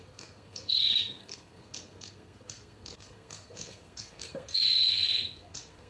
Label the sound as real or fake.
fake